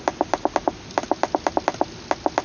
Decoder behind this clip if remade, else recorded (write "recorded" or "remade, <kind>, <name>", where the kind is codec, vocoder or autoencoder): recorded